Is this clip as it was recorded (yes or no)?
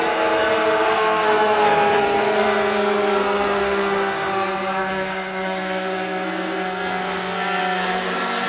no